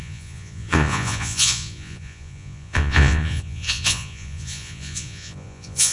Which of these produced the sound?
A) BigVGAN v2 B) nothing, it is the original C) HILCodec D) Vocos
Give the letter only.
D